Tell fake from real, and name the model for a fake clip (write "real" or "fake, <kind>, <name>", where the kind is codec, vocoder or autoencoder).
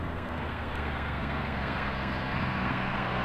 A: fake, codec, SNAC